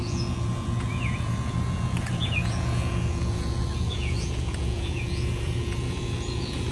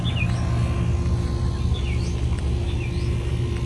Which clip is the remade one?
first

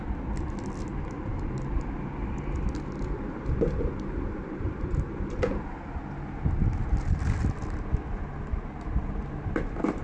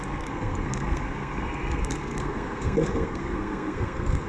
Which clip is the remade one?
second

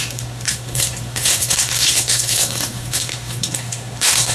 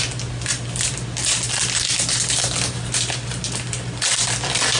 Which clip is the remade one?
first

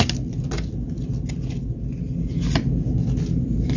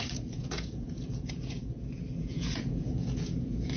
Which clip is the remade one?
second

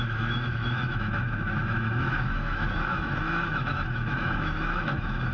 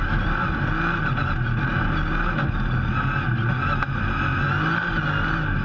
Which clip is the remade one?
first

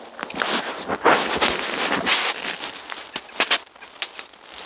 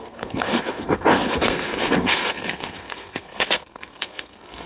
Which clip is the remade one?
second